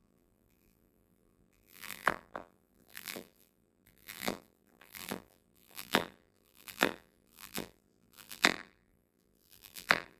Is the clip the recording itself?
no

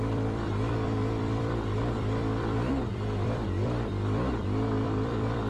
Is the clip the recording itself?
no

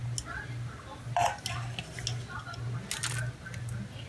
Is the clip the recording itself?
yes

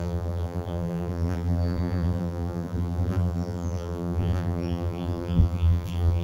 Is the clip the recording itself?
no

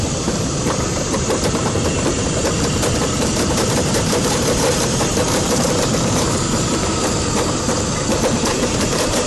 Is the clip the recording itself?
no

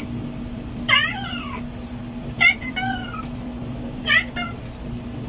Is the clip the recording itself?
no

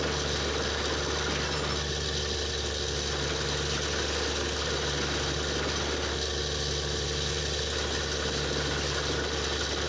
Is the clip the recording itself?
yes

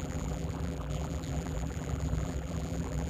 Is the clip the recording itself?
no